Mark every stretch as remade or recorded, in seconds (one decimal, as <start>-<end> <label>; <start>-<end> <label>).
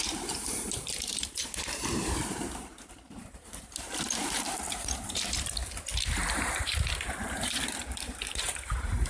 0.0-5.6 remade; 5.6-6.6 recorded; 6.6-9.1 remade